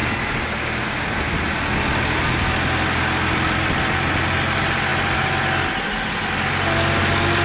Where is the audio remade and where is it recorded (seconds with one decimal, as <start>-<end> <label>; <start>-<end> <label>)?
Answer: 0.0-7.4 recorded